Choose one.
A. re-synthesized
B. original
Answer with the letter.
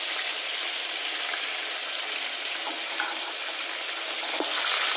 B